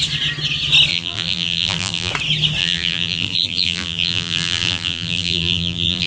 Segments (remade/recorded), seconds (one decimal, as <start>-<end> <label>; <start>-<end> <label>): 0.0-0.9 recorded; 0.9-2.1 remade; 2.1-2.6 recorded; 2.6-6.1 remade